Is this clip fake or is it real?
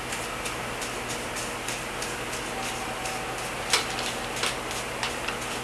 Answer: real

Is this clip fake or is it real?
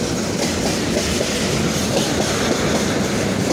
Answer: real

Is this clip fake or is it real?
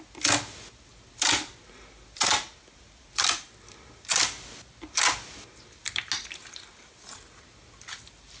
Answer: real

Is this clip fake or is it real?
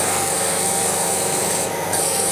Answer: fake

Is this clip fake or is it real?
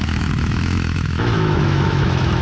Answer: fake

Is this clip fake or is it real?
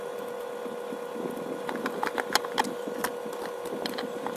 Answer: real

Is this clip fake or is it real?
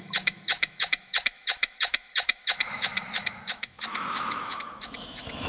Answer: fake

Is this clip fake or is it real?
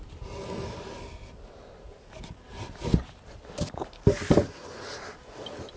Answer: real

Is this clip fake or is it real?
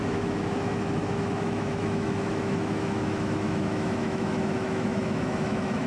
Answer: fake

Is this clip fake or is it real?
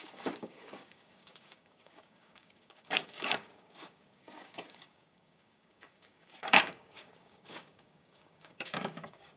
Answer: fake